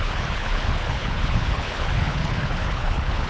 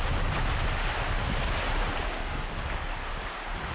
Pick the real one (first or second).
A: second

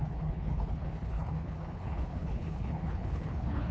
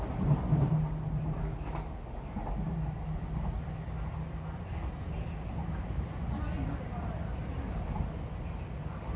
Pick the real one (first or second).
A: second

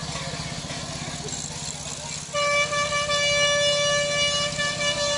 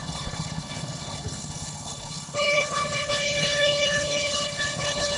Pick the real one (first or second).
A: first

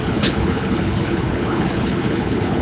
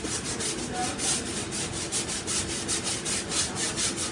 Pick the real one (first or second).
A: second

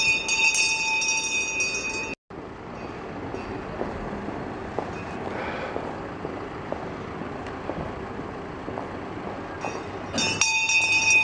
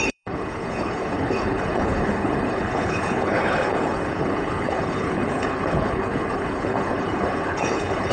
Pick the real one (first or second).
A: first